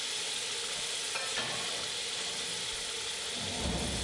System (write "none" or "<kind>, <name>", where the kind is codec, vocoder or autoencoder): none